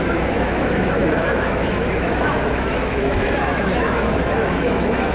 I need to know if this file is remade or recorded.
remade